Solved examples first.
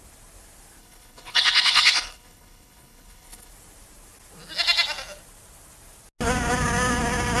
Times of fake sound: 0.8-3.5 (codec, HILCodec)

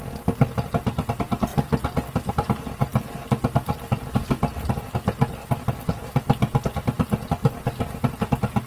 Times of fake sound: none

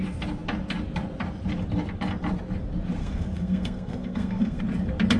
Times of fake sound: 3.0-4.6 (codec, SNAC)